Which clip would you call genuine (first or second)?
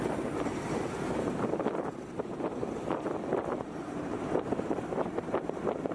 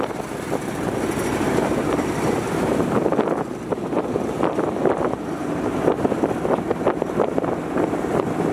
first